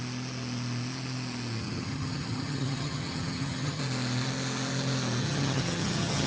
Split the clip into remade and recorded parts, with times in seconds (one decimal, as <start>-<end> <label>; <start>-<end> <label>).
0.0-1.6 recorded; 1.6-3.8 remade; 3.8-5.2 recorded; 5.2-6.3 remade